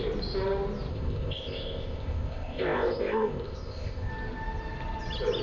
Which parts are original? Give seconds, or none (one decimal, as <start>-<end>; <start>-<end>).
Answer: 0.0-0.9; 4.1-5.4